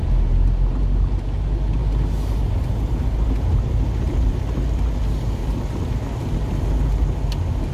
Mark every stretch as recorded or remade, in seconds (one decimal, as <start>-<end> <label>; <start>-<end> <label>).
0.0-7.7 recorded